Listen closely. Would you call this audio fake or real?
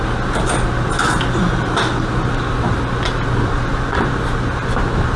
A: real